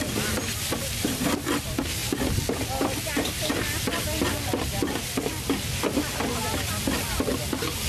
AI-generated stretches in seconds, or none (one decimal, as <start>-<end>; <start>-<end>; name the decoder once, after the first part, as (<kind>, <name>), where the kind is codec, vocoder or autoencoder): 0.8-1.6 (vocoder, BigVGAN v2)